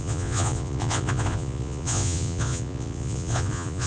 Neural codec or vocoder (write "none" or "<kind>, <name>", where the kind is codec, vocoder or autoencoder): vocoder, Vocos